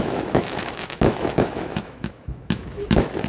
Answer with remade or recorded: remade